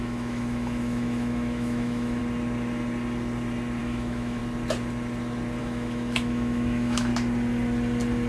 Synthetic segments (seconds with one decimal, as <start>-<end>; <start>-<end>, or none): 0.0-2.2; 3.8-4.4; 5.6-7.1